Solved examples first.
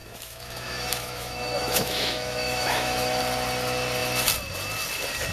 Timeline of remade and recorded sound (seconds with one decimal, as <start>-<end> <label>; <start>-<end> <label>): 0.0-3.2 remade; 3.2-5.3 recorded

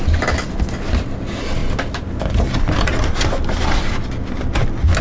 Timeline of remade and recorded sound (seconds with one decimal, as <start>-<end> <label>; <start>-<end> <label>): 0.0-5.0 recorded

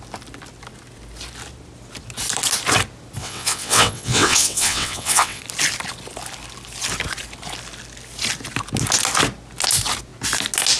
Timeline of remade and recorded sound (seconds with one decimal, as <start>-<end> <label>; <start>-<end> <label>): 0.0-3.2 recorded; 3.2-5.4 remade; 5.4-10.8 recorded